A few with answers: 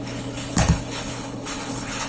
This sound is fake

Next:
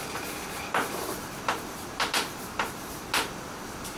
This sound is fake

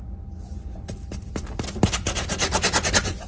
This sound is real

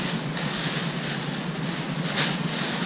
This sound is real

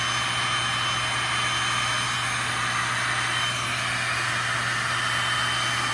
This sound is real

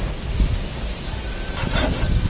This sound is real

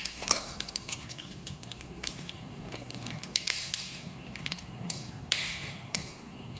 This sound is fake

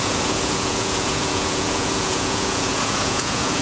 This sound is fake